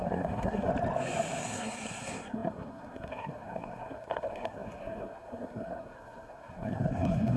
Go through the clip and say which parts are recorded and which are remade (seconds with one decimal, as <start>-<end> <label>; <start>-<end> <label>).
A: 0.0-0.7 remade; 0.7-1.4 recorded; 1.4-7.4 remade